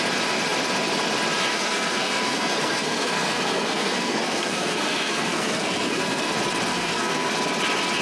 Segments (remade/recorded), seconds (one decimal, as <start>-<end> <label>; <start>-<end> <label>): 0.0-1.5 recorded; 1.5-6.3 remade; 6.3-6.7 recorded; 6.7-7.3 remade; 7.3-8.0 recorded